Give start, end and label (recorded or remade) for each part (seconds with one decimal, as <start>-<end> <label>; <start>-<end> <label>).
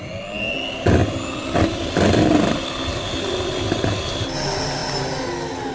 0.0-5.7 recorded